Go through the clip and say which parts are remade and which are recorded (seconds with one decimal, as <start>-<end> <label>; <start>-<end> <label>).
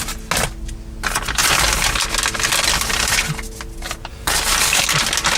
0.0-4.1 recorded; 4.1-5.0 remade; 5.0-5.4 recorded